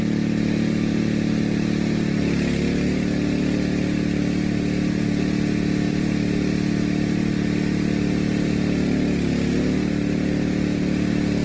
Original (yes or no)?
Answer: yes